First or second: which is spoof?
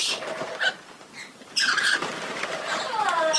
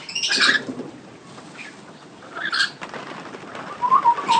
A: first